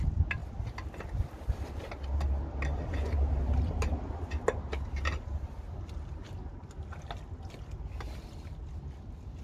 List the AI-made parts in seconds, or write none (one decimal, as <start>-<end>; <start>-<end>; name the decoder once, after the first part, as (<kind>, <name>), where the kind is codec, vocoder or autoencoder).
none